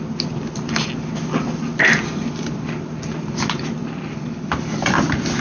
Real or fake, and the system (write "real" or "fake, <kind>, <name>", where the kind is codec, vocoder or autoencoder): real